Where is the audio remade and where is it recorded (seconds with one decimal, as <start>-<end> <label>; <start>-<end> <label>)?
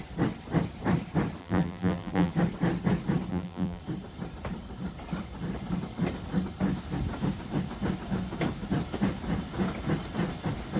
0.0-1.4 recorded; 1.4-2.3 remade; 2.3-3.3 recorded; 3.3-3.8 remade; 3.8-10.8 recorded